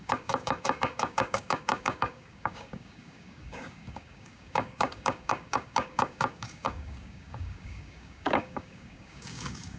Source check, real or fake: fake